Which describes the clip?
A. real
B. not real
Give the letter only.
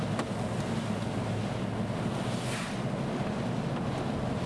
A